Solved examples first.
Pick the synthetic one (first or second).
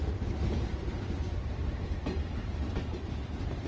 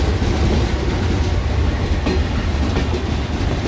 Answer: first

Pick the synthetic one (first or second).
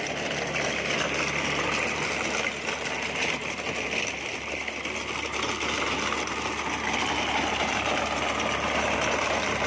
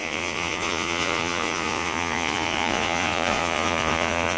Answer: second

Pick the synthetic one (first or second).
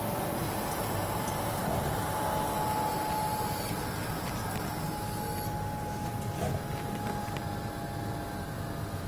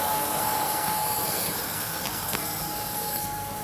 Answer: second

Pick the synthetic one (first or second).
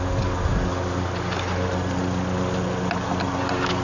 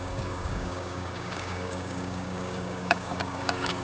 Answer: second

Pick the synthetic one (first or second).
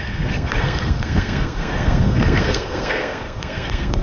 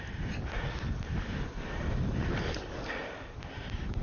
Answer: first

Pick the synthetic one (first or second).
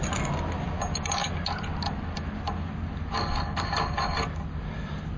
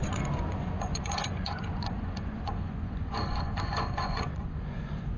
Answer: second